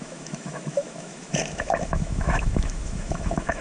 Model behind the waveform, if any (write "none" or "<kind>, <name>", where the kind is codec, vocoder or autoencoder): autoencoder, DAC-VAE